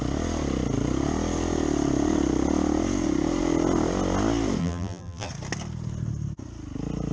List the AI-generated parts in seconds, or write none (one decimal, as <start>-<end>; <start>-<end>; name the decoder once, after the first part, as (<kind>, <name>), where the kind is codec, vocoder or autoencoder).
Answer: 4.6-5.3 (vocoder, BigVGAN v2)